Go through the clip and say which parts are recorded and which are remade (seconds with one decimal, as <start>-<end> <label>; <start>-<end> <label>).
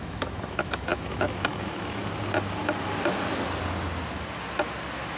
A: 0.0-2.0 remade; 2.0-5.2 recorded